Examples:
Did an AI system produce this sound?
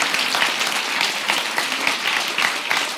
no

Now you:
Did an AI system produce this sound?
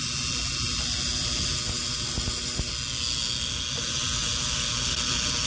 no